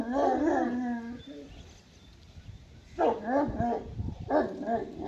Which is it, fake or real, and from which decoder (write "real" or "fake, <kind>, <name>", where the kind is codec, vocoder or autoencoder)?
real